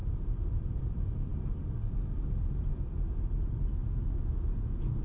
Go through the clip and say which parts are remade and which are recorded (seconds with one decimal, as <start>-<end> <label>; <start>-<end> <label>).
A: 0.0-3.8 remade; 3.8-5.0 recorded